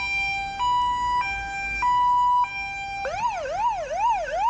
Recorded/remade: recorded